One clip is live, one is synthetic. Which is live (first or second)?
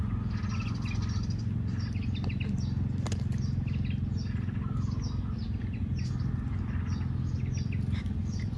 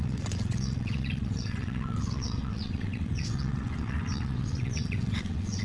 first